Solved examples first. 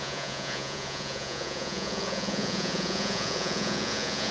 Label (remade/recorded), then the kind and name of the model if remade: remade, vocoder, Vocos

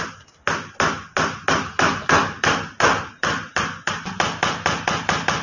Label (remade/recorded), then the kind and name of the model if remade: recorded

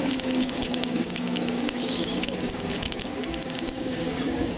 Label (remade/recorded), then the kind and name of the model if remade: remade, codec, DAC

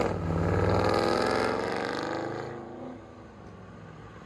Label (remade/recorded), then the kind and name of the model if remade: recorded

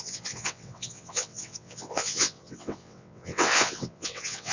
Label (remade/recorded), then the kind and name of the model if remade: remade, vocoder, WaveNeXt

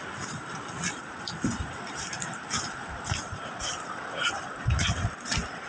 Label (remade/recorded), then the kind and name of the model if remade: recorded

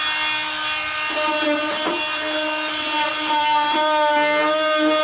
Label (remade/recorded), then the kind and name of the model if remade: recorded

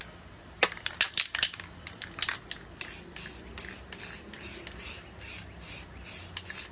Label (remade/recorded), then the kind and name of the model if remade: recorded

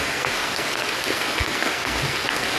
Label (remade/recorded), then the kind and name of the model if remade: remade, codec, SNAC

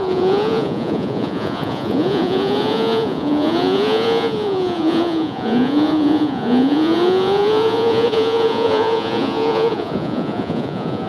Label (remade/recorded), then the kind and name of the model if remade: remade, vocoder, Vocos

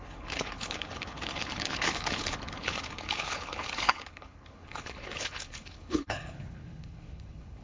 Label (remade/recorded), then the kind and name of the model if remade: remade, codec, HILCodec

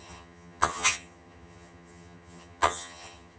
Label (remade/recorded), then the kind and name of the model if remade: remade, vocoder, HiFi-GAN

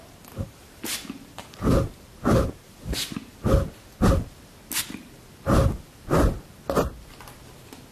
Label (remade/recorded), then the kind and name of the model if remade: recorded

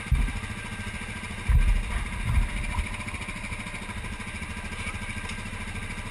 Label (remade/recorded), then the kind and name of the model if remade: recorded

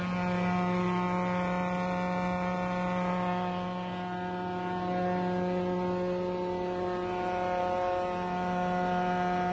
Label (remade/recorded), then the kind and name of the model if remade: recorded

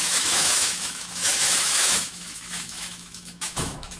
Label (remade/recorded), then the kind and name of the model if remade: remade, autoencoder, DAC-VAE